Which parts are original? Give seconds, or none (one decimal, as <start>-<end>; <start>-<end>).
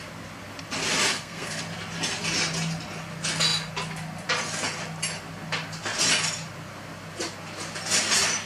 0.0-1.1; 1.6-8.5